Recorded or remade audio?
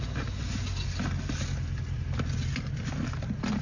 recorded